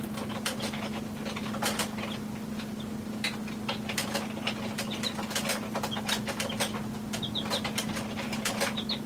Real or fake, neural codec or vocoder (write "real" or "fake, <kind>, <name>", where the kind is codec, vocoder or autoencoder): real